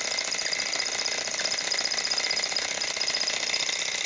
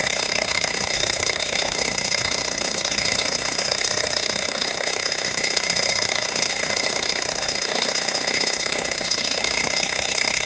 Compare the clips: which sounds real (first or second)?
first